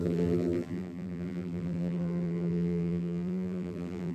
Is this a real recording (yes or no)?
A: no